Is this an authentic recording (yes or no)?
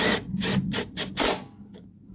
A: yes